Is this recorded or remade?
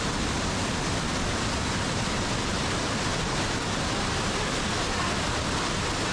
recorded